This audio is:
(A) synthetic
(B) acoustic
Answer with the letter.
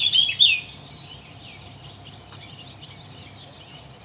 B